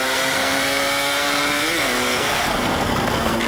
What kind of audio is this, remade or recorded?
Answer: remade